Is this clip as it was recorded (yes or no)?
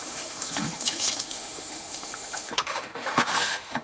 no